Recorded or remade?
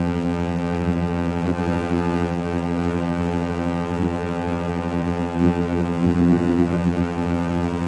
remade